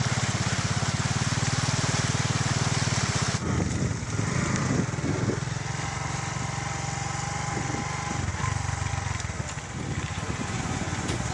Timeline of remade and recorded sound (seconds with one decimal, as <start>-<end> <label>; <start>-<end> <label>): 0.0-10.1 recorded; 10.1-11.3 remade